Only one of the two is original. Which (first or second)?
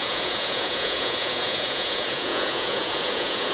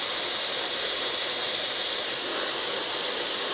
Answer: second